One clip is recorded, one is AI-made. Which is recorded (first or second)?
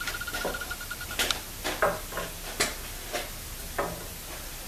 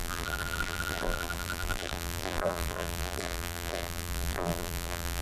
first